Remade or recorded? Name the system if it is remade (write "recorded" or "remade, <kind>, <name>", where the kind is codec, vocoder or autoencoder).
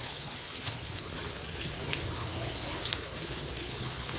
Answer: remade, codec, HILCodec